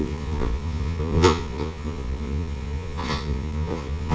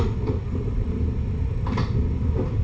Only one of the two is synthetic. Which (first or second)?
first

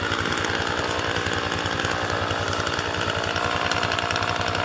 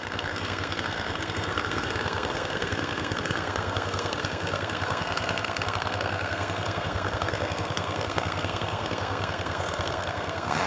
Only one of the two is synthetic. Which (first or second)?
second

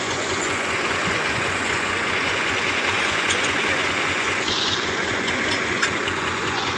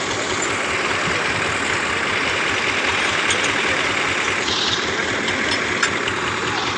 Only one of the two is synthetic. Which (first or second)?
first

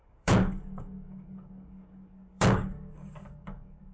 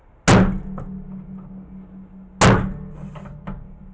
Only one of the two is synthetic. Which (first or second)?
first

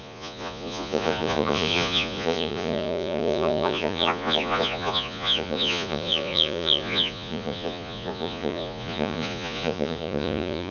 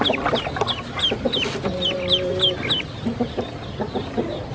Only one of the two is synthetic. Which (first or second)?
first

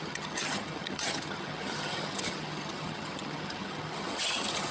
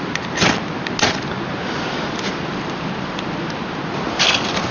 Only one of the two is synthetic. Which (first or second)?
first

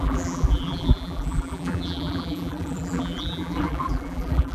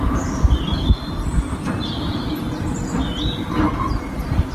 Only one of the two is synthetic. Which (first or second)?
first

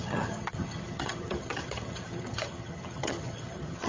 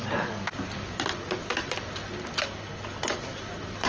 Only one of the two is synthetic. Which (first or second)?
first